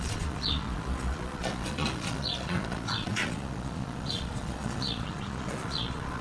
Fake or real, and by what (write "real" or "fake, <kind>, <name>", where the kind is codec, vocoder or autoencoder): fake, vocoder, Vocos